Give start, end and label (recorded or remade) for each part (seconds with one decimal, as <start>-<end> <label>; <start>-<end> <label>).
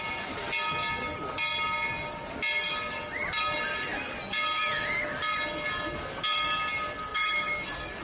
0.0-7.1 recorded; 7.1-8.0 remade